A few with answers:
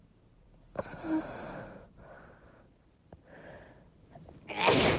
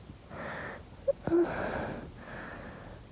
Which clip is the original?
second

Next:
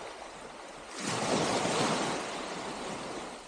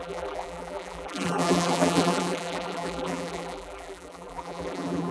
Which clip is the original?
first